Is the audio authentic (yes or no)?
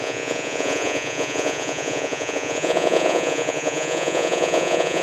no